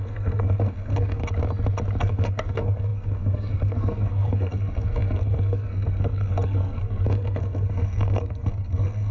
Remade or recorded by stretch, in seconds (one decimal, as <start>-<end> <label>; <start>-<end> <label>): 0.0-1.2 remade; 1.2-2.0 recorded; 2.0-9.1 remade